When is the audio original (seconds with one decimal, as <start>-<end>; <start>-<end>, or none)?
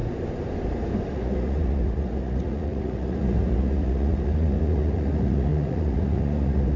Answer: 0.0-1.1